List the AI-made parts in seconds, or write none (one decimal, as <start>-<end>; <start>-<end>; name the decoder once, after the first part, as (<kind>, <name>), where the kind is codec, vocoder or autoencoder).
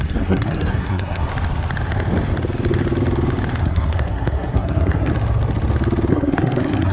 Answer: 0.0-1.3 (codec, SNAC); 3.6-5.1; 6.1-6.9